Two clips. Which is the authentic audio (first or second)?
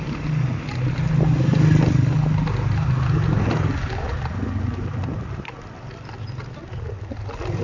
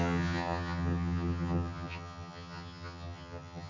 first